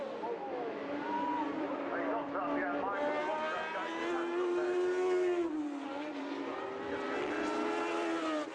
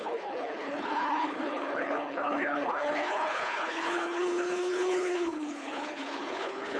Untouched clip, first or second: first